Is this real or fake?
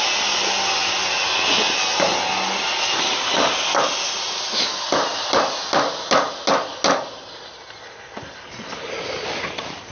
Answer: real